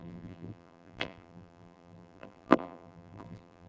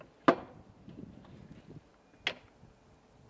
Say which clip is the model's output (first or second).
first